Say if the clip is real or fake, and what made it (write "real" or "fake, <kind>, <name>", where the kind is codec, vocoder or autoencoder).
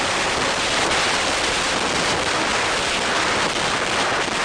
real